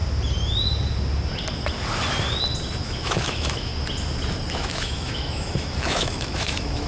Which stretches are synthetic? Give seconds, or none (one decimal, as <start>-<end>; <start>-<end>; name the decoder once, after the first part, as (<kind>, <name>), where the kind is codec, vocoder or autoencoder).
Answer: 2.8-3.7 (autoencoder, DAC-VAE); 4.5-6.9